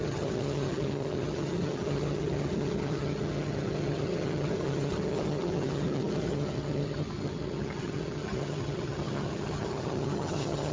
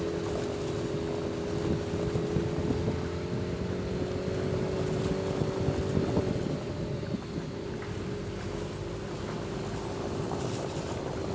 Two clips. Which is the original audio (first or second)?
second